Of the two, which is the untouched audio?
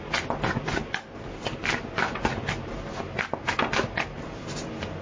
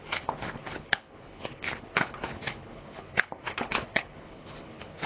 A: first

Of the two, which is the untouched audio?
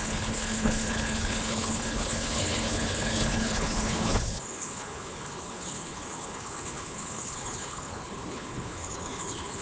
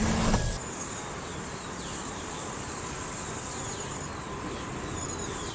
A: second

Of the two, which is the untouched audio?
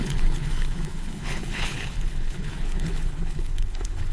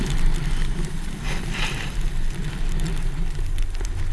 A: second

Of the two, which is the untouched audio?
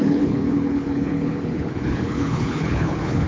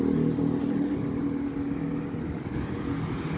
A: second